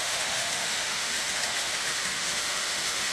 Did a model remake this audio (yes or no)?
yes